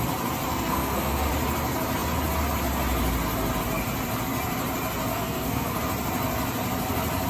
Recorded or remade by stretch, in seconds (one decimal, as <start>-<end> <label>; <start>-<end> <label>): 0.0-0.5 recorded; 0.5-1.3 remade; 1.3-5.1 recorded; 5.1-5.8 remade; 5.8-7.3 recorded